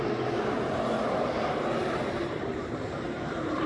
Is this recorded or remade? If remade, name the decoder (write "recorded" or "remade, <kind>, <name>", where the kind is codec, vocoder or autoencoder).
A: remade, vocoder, BigVGAN v2